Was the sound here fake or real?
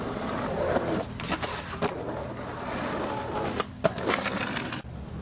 real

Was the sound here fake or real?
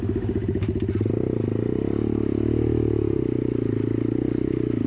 real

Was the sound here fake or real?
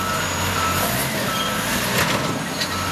real